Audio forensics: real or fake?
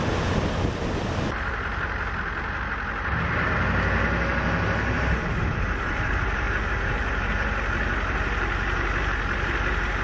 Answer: real